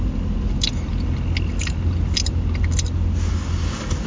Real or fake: real